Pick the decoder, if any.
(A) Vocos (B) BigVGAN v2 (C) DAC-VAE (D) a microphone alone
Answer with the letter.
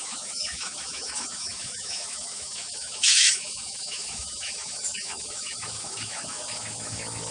C